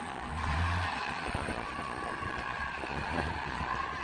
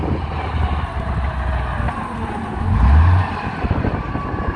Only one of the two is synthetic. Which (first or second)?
first